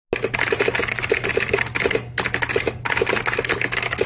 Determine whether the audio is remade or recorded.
recorded